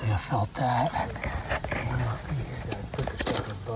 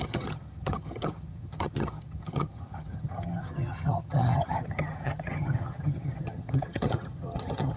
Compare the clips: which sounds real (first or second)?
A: first